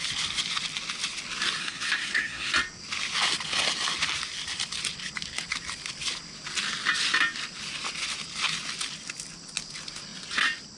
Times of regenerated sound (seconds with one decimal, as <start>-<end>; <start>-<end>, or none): 1.6-2.5